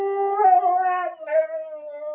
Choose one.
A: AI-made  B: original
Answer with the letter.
B